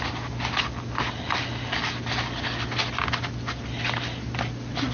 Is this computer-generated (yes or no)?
no